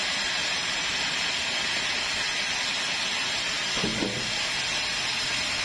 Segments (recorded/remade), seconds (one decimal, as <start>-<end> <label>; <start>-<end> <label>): 0.0-0.4 recorded; 0.4-1.3 remade; 1.3-5.6 recorded